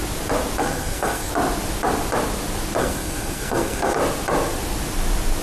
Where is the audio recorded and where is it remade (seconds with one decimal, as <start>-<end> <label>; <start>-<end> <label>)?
0.0-0.6 recorded; 0.6-1.3 remade; 1.3-2.8 recorded; 2.8-4.0 remade; 4.0-5.4 recorded